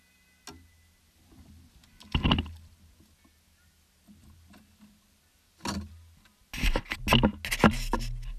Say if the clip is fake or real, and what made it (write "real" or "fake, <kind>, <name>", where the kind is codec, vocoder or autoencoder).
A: real